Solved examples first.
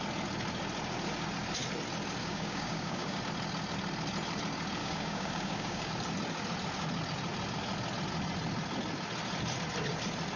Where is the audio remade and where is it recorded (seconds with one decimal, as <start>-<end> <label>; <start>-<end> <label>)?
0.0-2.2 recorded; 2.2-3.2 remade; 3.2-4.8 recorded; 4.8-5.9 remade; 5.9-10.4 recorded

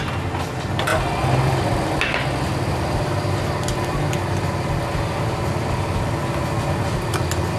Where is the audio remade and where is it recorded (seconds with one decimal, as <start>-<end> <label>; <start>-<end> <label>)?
0.0-7.6 recorded

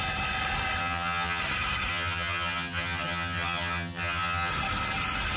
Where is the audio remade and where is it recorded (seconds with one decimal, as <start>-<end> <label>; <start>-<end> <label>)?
0.0-0.8 recorded; 0.8-1.4 remade; 1.4-1.9 recorded; 1.9-4.5 remade; 4.5-5.4 recorded

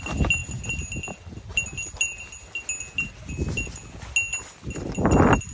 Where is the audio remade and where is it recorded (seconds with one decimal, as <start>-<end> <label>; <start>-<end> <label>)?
0.0-5.5 recorded